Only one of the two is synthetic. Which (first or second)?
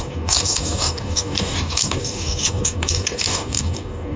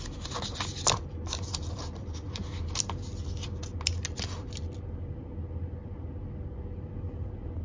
first